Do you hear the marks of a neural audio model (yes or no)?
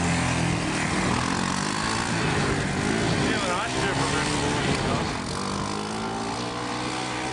no